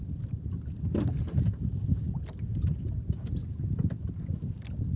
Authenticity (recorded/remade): recorded